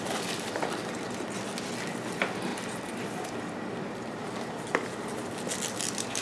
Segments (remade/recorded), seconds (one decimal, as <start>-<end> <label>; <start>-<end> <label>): 0.0-6.2 recorded